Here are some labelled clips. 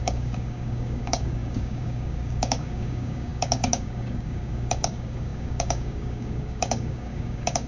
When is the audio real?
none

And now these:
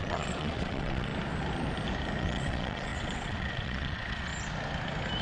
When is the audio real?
1.1-2.2; 4.3-5.2

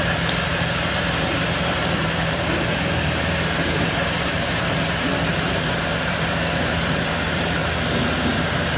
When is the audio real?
7.6-8.2

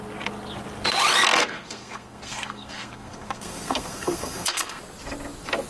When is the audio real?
0.0-1.4; 4.8-5.7

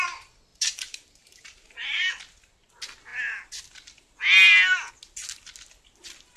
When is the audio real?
0.0-0.5; 2.1-6.4